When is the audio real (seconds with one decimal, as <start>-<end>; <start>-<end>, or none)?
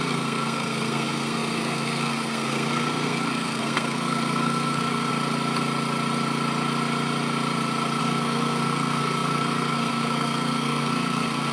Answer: 5.1-8.0